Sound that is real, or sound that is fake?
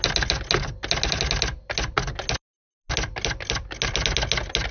real